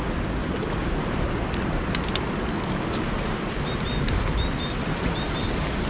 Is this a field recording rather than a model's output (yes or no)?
yes